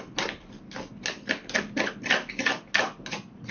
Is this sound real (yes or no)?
yes